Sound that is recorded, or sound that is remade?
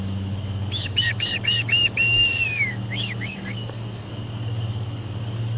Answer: remade